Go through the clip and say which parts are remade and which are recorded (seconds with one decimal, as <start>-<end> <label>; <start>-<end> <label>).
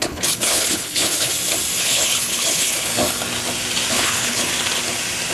0.0-1.3 remade; 1.3-1.8 recorded; 1.8-2.9 remade; 2.9-3.9 recorded; 3.9-4.5 remade; 4.5-5.3 recorded